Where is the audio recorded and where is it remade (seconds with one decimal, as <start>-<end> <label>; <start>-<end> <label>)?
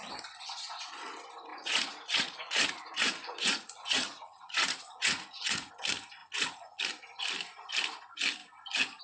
0.0-1.5 recorded; 1.5-5.7 remade; 5.7-6.2 recorded; 6.2-6.8 remade; 6.8-9.0 recorded